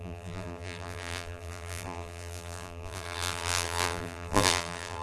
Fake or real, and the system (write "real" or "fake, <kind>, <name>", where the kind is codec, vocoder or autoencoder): fake, vocoder, BigVGAN v2